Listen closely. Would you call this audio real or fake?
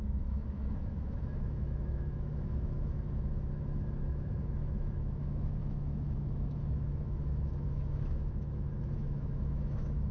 fake